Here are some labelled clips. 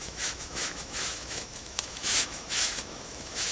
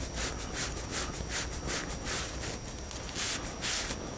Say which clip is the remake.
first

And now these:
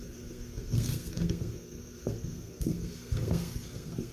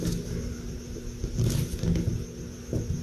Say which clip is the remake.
first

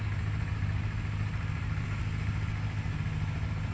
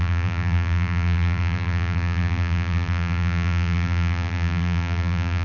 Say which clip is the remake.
second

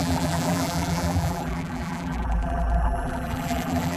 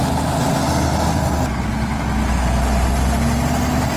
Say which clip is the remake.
first